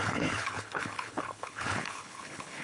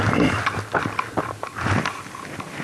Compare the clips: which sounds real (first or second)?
second